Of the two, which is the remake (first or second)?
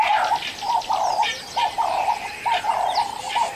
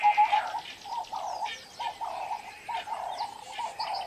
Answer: first